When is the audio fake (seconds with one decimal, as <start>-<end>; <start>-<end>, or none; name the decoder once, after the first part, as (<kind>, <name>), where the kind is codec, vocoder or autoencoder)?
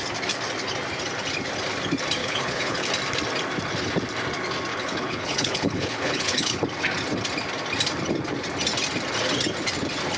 2.2-2.9 (codec, HILCodec); 4.7-6.6